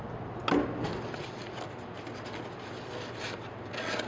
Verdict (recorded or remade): recorded